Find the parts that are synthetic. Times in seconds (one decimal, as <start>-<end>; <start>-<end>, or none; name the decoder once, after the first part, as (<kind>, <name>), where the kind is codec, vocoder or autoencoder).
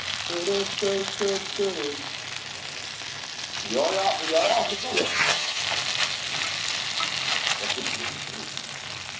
4.4-5.6 (vocoder, HiFi-GAN)